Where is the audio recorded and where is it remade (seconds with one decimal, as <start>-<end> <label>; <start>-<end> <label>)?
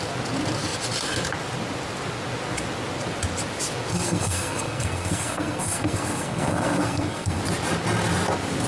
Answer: 0.0-3.9 recorded; 3.9-7.4 remade; 7.4-8.7 recorded